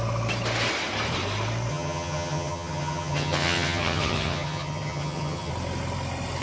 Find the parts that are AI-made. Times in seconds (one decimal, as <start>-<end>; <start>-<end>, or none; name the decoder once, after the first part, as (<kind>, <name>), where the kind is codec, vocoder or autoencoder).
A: 1.7-5.5 (vocoder, HiFi-GAN)